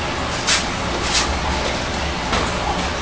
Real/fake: real